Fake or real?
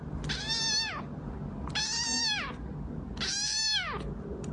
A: real